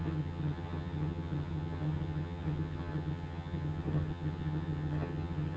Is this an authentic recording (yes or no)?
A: no